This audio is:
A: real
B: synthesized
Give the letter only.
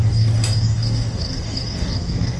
B